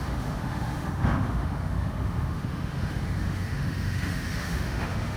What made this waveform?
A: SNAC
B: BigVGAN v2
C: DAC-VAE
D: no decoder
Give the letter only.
C